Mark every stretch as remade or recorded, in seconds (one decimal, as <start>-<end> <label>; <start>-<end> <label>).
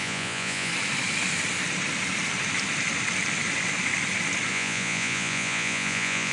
0.0-0.7 remade; 0.7-4.5 recorded; 4.5-6.3 remade